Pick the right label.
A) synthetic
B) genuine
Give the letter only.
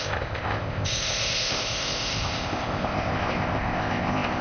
A